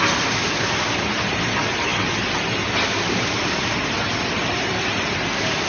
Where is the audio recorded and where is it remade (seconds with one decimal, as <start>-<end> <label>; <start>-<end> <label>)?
0.0-5.7 recorded